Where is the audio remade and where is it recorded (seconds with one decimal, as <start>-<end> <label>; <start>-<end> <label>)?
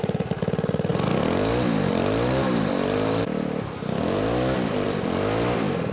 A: 0.0-5.9 recorded